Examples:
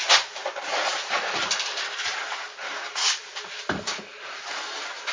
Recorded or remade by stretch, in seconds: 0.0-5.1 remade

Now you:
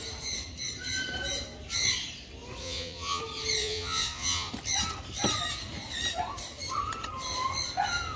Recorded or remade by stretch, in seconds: 0.0-2.6 recorded; 2.6-3.2 remade; 3.2-3.6 recorded; 3.6-4.5 remade; 4.5-8.2 recorded

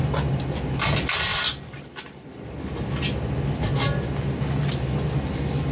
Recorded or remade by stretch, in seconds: 0.0-5.7 recorded